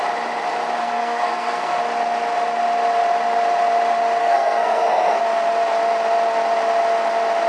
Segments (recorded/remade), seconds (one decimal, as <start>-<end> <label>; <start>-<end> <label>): 0.0-0.8 recorded; 0.8-1.8 remade; 1.8-4.2 recorded; 4.2-5.2 remade; 5.2-7.5 recorded